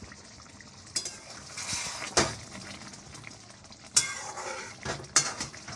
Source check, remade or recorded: recorded